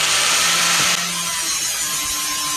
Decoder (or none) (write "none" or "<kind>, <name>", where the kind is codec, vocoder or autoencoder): none